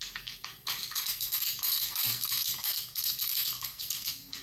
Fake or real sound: fake